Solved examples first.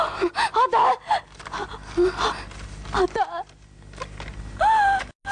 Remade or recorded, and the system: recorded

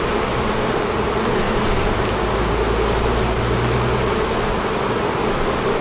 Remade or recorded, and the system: recorded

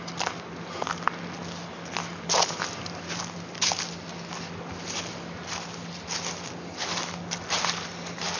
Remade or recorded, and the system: recorded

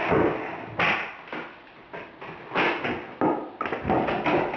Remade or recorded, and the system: recorded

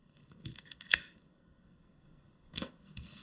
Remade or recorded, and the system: remade, codec, SNAC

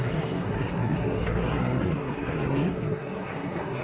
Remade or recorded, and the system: remade, codec, SNAC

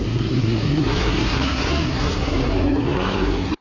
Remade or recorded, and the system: remade, codec, SNAC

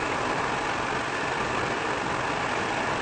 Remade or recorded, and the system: recorded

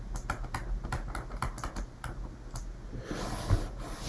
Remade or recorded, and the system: recorded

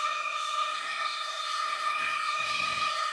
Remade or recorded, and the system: remade, codec, SNAC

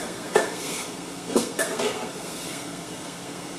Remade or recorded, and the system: remade, codec, SNAC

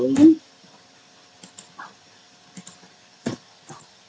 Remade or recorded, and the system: recorded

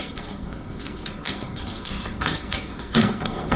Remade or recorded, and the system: remade, codec, SNAC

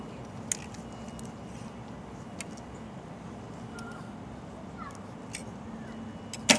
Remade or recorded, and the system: recorded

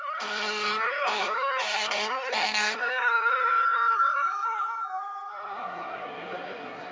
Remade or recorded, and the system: remade, codec, SNAC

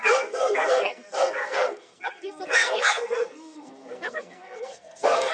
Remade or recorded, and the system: remade, codec, SNAC